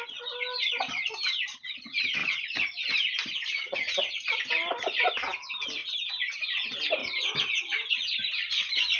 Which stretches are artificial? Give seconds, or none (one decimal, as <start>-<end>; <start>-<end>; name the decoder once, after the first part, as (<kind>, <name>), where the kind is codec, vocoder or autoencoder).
none